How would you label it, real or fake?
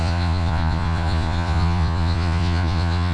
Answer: fake